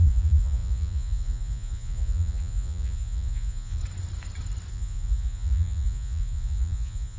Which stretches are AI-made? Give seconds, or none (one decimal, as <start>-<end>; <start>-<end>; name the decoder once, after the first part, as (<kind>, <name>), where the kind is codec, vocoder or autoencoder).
0.0-3.8 (vocoder, Vocos); 4.7-7.2